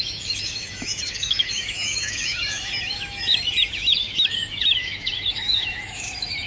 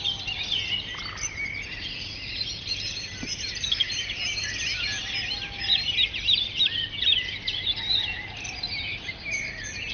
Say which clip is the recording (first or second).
second